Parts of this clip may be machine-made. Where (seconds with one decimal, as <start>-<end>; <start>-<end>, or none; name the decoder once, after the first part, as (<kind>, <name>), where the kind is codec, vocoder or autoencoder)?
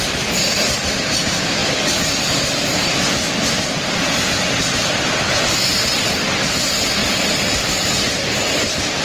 0.0-7.0 (vocoder, BigVGAN v2); 7.7-9.0